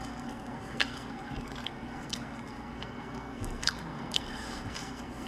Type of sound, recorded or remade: remade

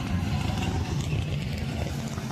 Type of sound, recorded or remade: remade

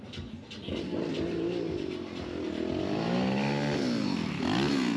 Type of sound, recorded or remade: recorded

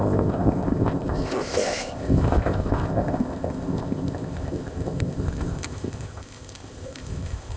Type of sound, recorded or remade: remade